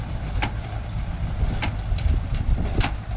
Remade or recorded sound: remade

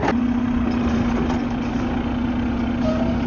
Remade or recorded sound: recorded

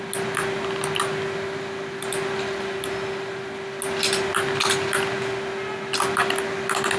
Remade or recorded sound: recorded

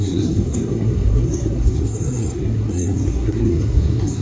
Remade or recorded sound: remade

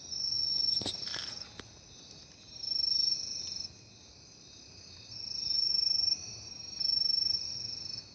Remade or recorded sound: recorded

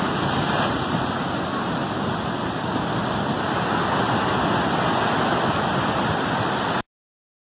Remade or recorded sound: recorded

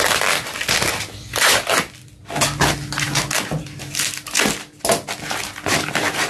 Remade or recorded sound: recorded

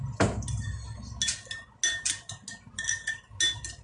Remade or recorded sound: recorded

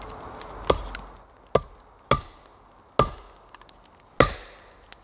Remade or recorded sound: recorded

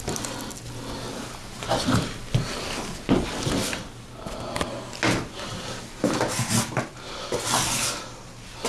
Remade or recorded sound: recorded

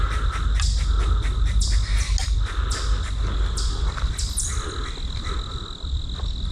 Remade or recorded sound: recorded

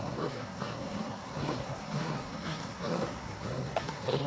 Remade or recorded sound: remade